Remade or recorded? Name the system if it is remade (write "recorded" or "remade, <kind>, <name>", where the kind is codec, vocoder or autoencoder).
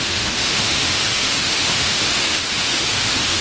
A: remade, autoencoder, DAC-VAE